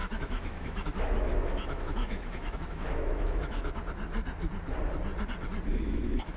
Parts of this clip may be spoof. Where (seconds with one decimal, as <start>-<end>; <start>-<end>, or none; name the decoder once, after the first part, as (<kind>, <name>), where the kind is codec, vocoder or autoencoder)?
0.0-3.8 (autoencoder, DAC-VAE); 5.7-6.4